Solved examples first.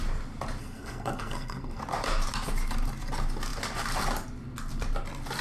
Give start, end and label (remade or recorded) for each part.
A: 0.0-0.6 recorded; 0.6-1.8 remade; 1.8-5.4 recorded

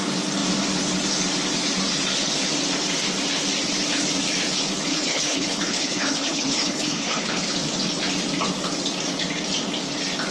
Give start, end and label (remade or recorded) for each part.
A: 0.0-4.9 recorded; 4.9-7.5 remade; 7.5-10.3 recorded

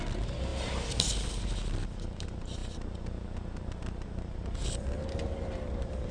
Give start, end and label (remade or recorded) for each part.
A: 0.0-6.1 recorded